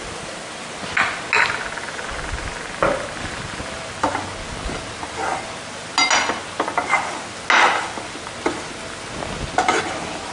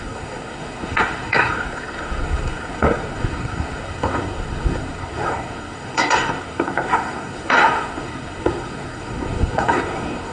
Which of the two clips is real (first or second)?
first